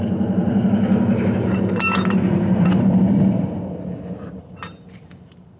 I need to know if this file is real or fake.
fake